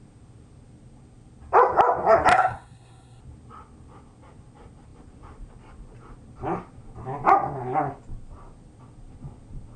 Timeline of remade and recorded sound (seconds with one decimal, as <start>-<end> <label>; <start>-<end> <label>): 0.0-2.3 recorded; 2.3-3.2 remade; 3.2-9.8 recorded